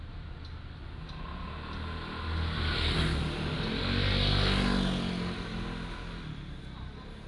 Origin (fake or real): real